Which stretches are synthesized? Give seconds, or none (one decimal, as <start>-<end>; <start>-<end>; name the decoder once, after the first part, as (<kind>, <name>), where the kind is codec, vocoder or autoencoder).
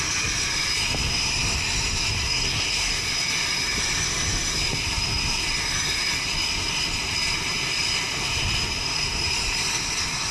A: 2.2-3.0 (codec, SNAC)